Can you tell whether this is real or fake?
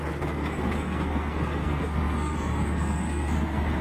fake